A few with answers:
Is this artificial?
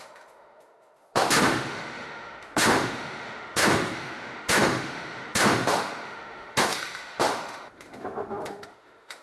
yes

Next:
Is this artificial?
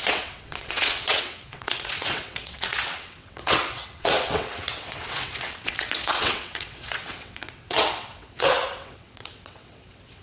yes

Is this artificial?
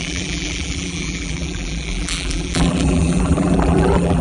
yes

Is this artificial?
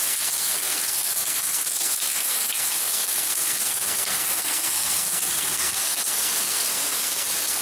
yes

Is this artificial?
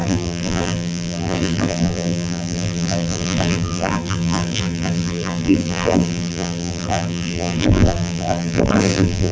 yes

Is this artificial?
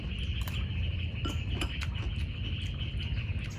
no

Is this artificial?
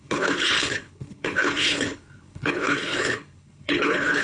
yes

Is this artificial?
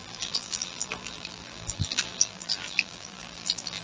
yes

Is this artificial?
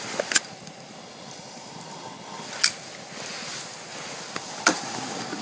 no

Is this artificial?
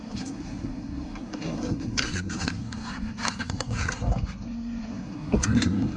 yes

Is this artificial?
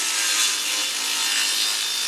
no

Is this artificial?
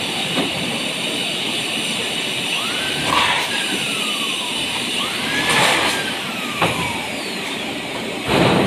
yes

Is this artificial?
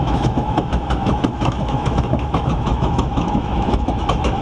yes